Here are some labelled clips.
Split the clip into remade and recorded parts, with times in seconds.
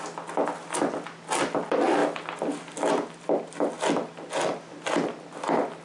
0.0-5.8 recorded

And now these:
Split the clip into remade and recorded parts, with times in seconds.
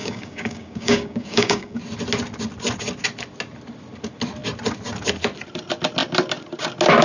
0.0-1.8 remade; 1.8-7.0 recorded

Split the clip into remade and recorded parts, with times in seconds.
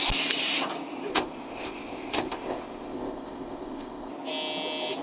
0.0-1.1 recorded; 1.1-4.1 remade; 4.1-5.0 recorded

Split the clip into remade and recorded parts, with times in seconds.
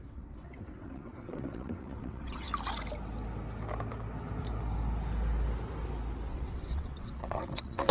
0.0-2.5 remade; 2.5-6.3 recorded; 6.3-7.9 remade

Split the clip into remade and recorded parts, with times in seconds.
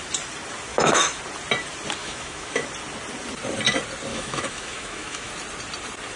0.0-0.7 recorded; 0.7-1.2 remade; 1.2-2.0 recorded; 2.0-2.7 remade; 2.7-4.1 recorded; 4.1-5.3 remade; 5.3-6.2 recorded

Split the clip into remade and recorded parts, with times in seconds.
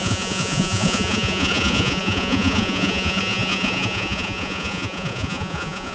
0.0-5.9 remade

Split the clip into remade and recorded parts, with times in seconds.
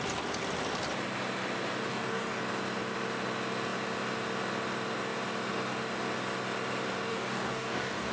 0.0-1.9 recorded; 1.9-2.4 remade; 2.4-7.1 recorded; 7.1-8.1 remade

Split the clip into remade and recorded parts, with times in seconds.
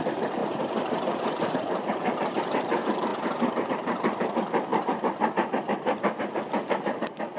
0.0-3.1 remade; 3.1-3.7 recorded; 3.7-7.4 remade